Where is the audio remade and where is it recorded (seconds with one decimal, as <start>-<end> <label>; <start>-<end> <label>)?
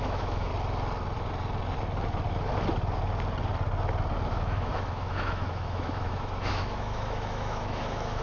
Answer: 0.0-0.5 remade; 0.5-4.3 recorded; 4.3-8.2 remade